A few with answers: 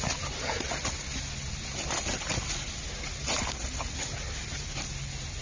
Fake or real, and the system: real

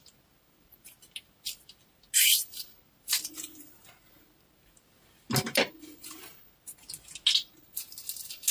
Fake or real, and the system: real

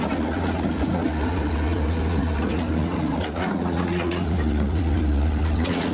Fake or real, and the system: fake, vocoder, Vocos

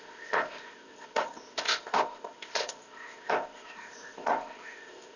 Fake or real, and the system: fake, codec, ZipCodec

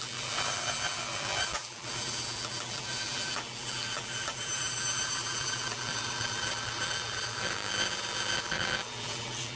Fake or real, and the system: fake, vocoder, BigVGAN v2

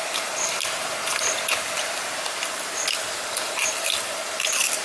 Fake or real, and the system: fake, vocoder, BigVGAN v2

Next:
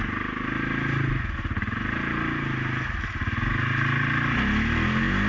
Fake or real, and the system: real